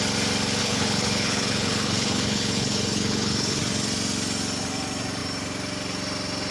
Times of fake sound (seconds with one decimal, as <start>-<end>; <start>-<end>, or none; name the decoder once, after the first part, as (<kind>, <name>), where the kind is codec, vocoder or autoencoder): 0.6-3.6 (codec, HILCodec)